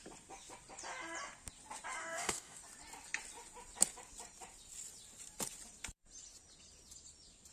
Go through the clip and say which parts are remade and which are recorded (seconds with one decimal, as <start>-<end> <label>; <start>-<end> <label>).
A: 0.0-2.0 recorded; 2.0-2.6 remade; 2.6-7.5 recorded